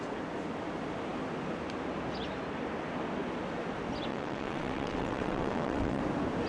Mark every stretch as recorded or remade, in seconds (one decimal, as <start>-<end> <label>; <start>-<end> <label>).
0.0-4.1 recorded; 4.1-6.0 remade; 6.0-6.5 recorded